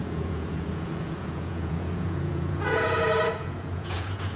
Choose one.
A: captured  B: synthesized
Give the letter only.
B